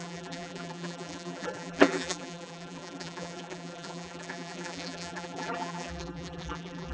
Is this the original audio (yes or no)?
no